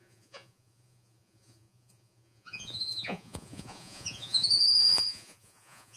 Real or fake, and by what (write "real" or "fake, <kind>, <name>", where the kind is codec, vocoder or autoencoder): fake, vocoder, Vocos